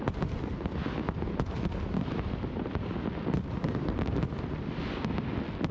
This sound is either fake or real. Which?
real